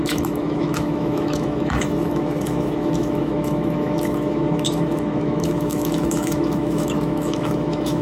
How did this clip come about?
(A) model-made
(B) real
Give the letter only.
A